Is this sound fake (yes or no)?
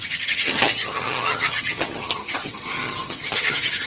yes